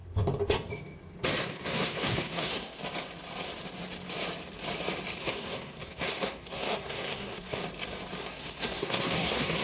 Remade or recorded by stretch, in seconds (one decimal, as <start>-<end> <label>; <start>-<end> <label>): 0.0-1.4 recorded; 1.4-2.8 remade; 2.8-5.2 recorded; 5.2-7.6 remade; 7.6-8.2 recorded; 8.2-9.6 remade

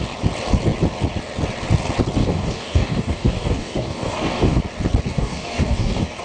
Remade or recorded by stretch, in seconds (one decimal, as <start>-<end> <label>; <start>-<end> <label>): 0.0-2.2 recorded; 2.2-4.6 remade; 4.6-5.1 recorded; 5.1-6.2 remade

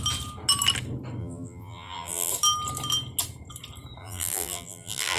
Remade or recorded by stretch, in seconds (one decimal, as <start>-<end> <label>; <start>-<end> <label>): 0.0-1.2 recorded; 1.2-2.3 remade; 2.3-4.0 recorded; 4.0-5.2 remade

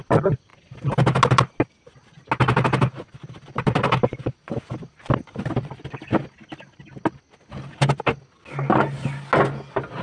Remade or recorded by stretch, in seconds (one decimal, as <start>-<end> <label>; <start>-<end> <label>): 0.0-10.0 recorded

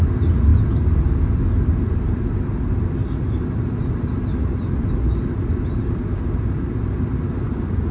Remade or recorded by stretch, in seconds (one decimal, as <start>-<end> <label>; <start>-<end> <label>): 0.0-7.9 recorded

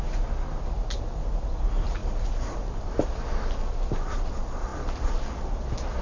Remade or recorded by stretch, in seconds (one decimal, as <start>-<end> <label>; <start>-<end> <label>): 0.0-6.0 recorded

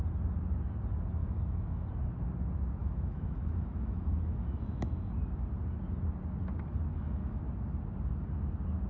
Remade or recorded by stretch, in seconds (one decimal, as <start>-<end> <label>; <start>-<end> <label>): 0.0-1.2 recorded; 1.2-1.9 remade; 1.9-2.8 recorded; 2.8-5.1 remade; 5.1-6.9 recorded; 6.9-7.4 remade; 7.4-8.9 recorded

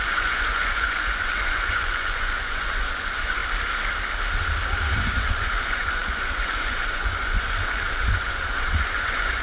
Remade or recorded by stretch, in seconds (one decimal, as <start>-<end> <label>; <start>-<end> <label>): 0.0-3.4 remade; 3.4-5.0 recorded; 5.0-9.4 remade